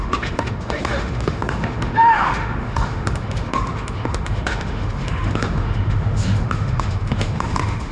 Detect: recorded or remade remade